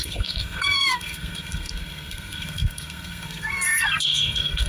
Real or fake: fake